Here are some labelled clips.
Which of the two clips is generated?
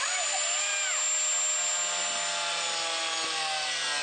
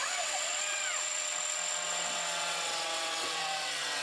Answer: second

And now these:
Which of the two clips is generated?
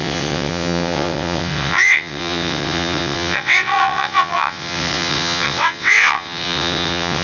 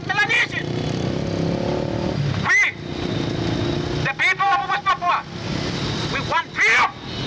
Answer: first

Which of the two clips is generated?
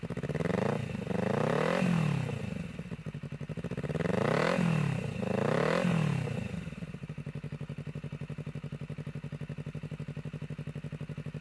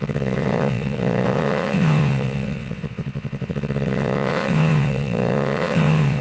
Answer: second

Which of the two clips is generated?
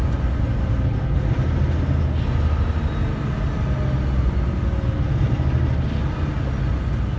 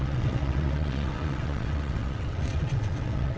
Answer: second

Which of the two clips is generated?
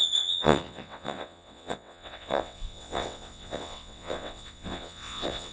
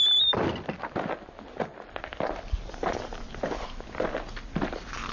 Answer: first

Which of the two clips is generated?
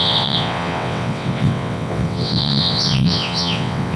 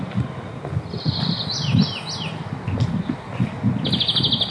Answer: first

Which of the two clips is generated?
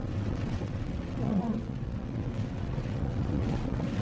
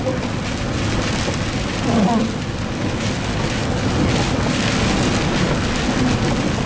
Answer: first